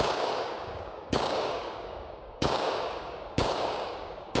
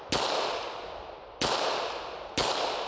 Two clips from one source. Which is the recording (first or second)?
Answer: second